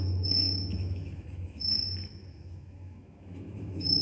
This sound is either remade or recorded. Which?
remade